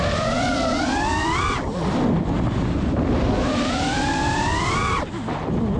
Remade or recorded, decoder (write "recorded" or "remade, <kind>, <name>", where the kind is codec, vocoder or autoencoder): remade, vocoder, BigVGAN v2